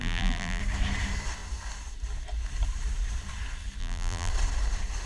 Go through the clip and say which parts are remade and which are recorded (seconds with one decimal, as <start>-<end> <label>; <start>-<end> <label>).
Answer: 0.0-0.6 remade; 0.6-3.8 recorded; 3.8-4.3 remade; 4.3-5.1 recorded